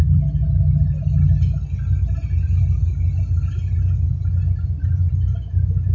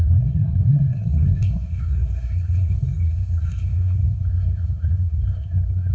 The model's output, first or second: second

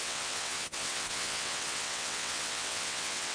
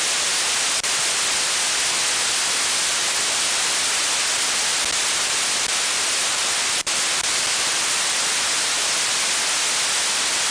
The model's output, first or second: first